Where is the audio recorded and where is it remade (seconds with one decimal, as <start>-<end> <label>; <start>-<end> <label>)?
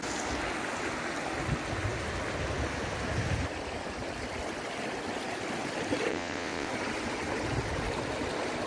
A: 0.0-6.1 recorded; 6.1-6.7 remade; 6.7-8.7 recorded